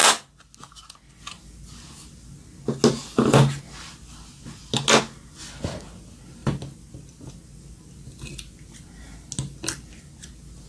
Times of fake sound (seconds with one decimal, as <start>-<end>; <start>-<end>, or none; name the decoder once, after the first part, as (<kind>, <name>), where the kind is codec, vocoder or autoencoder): none